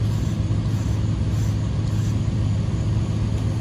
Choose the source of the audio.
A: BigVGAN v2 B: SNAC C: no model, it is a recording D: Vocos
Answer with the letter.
C